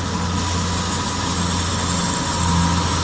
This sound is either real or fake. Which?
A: real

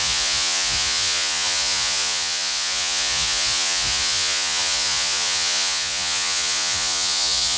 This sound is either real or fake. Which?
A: fake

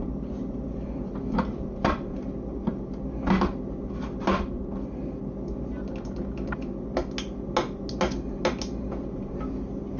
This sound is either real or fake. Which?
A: real